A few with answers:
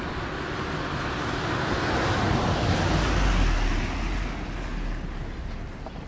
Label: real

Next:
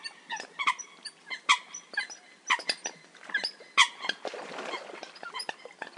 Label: real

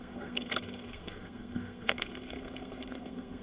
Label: fake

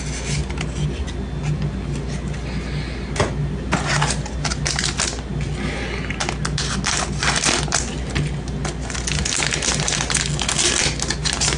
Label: real